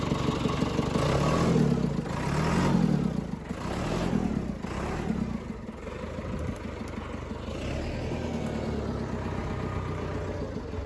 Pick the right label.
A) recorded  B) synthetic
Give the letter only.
A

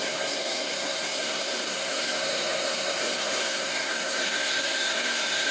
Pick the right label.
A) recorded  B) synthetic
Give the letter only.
B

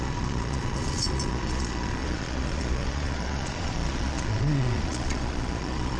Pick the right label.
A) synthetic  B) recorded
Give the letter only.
A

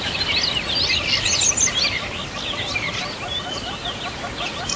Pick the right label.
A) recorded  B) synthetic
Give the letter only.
A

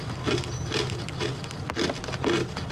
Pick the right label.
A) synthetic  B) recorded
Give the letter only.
B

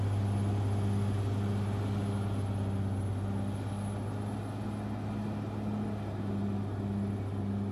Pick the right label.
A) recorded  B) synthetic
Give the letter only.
A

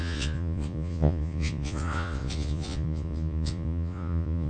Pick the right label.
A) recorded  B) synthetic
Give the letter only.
B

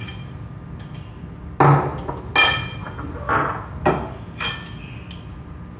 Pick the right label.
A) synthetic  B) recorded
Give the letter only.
B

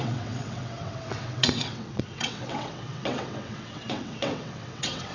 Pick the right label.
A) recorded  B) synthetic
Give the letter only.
B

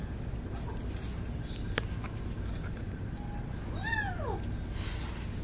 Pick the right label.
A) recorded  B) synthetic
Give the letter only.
A